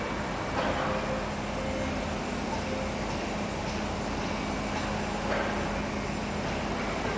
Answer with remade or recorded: recorded